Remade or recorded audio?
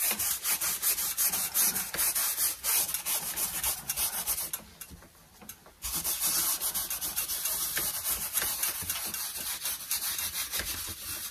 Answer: recorded